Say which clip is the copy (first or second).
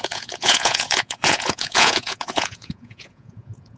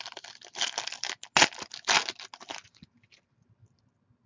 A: first